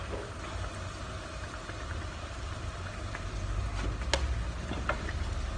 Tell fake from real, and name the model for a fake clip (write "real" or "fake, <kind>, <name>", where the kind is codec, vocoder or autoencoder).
real